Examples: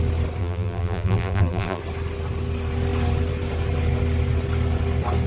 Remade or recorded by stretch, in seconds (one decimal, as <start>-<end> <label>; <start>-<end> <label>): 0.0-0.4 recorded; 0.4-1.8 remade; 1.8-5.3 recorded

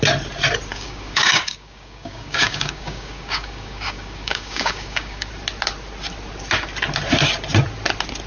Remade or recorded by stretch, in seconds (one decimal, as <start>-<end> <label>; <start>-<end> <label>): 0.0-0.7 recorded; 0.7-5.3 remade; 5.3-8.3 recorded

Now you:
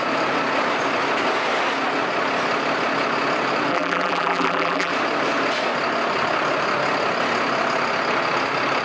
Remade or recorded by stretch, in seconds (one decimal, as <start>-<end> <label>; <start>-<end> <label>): 0.0-3.7 recorded; 3.7-4.9 remade; 4.9-8.8 recorded

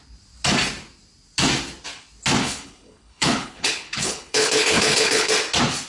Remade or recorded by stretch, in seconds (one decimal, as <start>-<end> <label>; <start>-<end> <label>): 0.0-2.4 recorded; 2.4-5.3 remade; 5.3-5.9 recorded

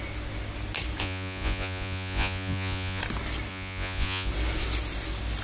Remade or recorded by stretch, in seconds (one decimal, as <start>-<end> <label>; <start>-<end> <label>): 0.0-1.0 recorded; 1.0-3.0 remade; 3.0-3.5 recorded; 3.5-4.3 remade; 4.3-5.4 recorded

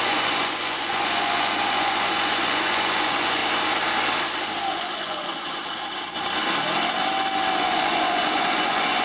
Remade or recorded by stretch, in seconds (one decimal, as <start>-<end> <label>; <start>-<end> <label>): 0.0-3.4 remade; 3.4-4.7 recorded; 4.7-5.6 remade; 5.6-7.6 recorded; 7.6-9.0 remade